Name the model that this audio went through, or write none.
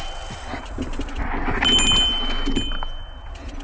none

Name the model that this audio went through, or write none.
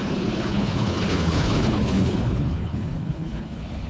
codec, HILCodec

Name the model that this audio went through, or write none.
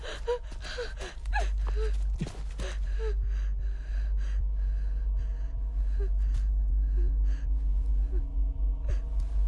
none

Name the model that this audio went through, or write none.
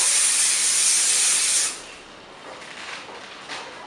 none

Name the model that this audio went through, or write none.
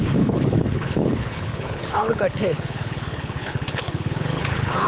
codec, HILCodec